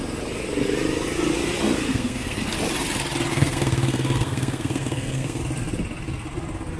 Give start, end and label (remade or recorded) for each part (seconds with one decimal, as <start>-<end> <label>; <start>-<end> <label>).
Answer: 0.0-1.9 recorded; 1.9-2.4 remade; 2.4-3.3 recorded; 3.3-5.4 remade; 5.4-6.8 recorded